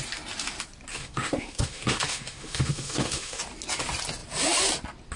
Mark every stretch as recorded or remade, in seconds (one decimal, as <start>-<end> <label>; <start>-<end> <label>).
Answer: 0.0-0.9 recorded; 0.9-3.4 remade; 3.4-5.2 recorded